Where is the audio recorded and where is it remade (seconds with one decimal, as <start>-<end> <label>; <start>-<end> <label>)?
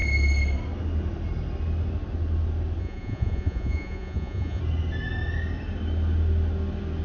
0.0-2.8 recorded; 2.8-4.6 remade; 4.6-7.0 recorded